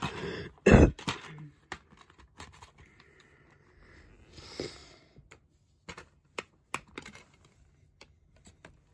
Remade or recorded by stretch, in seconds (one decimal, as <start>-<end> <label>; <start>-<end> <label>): 0.0-8.9 recorded